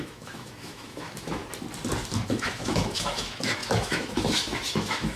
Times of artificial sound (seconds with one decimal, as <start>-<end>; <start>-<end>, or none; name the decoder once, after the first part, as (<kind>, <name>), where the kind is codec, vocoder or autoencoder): 0.0-1.4 (autoencoder, DAC-VAE); 2.3-5.2